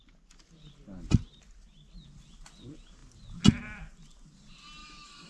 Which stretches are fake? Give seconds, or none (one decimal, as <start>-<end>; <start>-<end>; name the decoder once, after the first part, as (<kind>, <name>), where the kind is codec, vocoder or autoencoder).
4.8-5.3 (autoencoder, DAC-VAE)